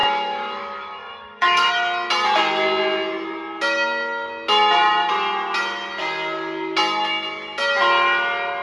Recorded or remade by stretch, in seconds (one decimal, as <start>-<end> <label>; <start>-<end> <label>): 0.0-1.7 remade; 1.7-8.6 recorded